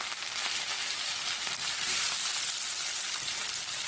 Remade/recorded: recorded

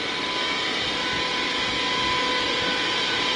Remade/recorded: recorded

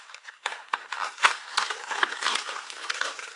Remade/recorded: remade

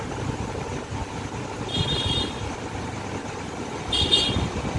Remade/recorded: recorded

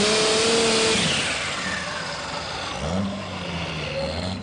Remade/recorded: recorded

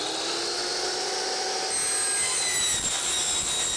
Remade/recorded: recorded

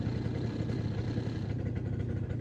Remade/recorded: recorded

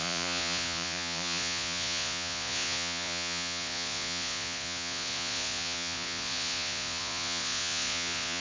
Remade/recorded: remade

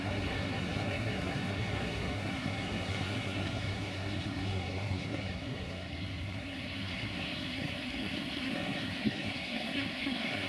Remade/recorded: remade